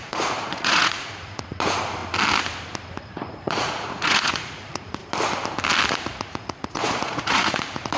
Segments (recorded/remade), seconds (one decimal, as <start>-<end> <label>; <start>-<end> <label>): 0.0-2.0 remade; 2.0-3.0 recorded; 3.0-5.0 remade; 5.0-5.9 recorded; 5.9-8.0 remade